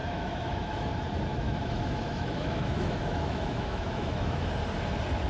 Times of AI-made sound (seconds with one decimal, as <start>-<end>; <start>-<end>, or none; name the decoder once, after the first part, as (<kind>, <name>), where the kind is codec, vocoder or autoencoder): 0.0-0.9 (autoencoder, DAC-VAE); 1.3-4.5